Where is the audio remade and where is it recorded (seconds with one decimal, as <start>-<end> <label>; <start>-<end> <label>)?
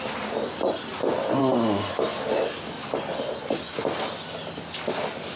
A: 0.0-5.4 recorded